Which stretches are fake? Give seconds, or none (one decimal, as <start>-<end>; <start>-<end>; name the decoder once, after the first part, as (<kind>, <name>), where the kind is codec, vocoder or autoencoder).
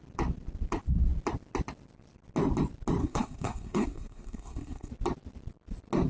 3.0-4.9 (codec, SNAC)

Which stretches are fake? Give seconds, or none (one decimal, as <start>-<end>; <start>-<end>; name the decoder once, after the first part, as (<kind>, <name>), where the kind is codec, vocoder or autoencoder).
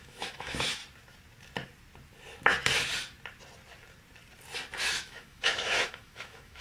0.0-0.8 (autoencoder, DAC-VAE); 4.8-6.6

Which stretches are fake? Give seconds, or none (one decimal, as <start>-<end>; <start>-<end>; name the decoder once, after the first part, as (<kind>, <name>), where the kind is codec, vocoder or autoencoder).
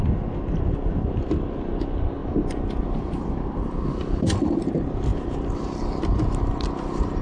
2.2-4.6 (vocoder, BigVGAN v2); 5.1-6.0